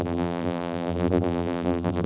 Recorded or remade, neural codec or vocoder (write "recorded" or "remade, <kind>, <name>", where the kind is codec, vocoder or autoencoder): remade, vocoder, BigVGAN v2